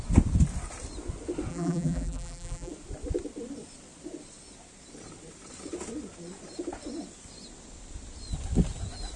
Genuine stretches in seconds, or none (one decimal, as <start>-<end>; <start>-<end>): 0.0-1.5; 2.7-9.2